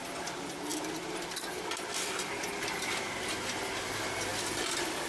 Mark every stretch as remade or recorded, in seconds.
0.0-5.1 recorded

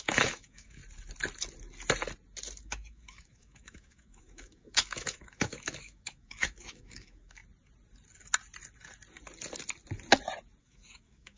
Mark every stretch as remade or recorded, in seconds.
0.0-0.8 remade; 0.8-2.6 recorded; 2.6-7.4 remade; 7.4-10.6 recorded; 10.6-11.4 remade

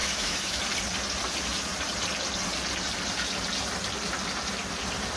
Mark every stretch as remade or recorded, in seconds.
0.0-0.6 remade; 0.6-5.2 recorded

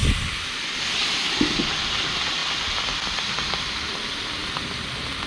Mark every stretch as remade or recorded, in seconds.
0.0-5.3 recorded

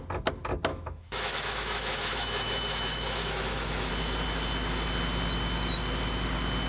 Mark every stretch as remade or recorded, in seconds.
0.0-0.7 recorded; 0.7-3.9 remade; 3.9-6.7 recorded